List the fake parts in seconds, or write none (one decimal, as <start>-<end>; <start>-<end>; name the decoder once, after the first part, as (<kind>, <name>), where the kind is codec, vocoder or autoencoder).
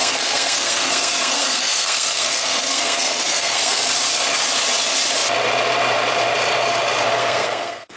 0.0-3.8 (codec, SNAC); 7.2-8.0